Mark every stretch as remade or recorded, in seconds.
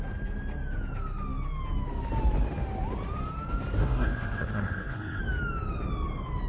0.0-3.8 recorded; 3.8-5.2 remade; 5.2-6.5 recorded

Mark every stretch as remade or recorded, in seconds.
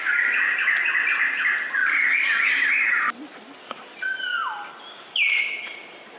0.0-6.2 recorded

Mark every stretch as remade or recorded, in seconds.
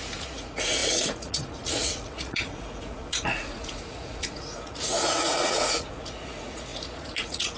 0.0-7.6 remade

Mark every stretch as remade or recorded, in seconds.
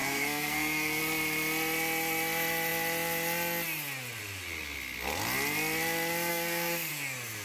0.0-1.0 remade; 1.0-6.3 recorded; 6.3-6.9 remade; 6.9-7.4 recorded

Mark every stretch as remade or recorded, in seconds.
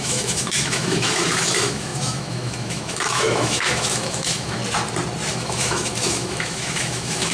0.0-4.6 remade; 4.6-5.3 recorded; 5.3-7.3 remade